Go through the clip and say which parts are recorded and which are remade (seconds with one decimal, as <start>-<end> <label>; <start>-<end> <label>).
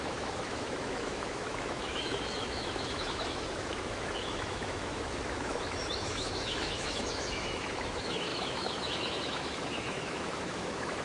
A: 0.0-11.0 remade